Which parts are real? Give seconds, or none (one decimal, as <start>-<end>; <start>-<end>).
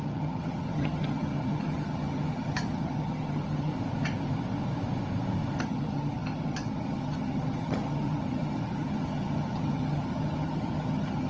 3.7-5.6